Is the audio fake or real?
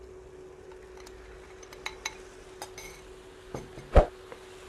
real